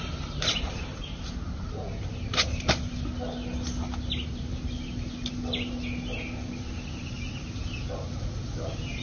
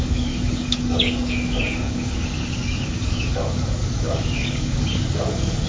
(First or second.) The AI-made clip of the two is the second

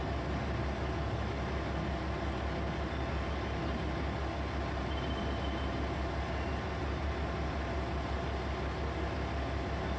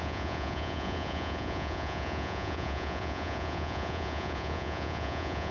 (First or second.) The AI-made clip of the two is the second